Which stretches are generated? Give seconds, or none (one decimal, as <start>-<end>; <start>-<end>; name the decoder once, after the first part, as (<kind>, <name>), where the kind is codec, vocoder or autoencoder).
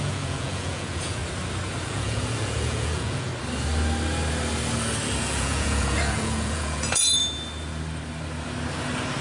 0.0-1.2 (vocoder, Vocos); 1.8-3.3; 5.2-7.2